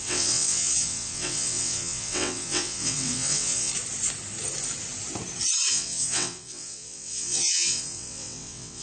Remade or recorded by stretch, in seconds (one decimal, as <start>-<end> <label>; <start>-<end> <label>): 0.0-3.7 remade; 3.7-5.7 recorded; 5.7-8.8 remade